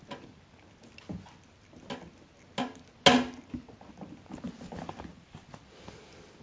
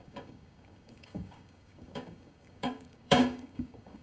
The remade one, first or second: second